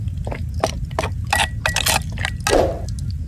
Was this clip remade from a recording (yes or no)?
no